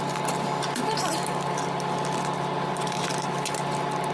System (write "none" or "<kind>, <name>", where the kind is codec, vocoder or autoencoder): none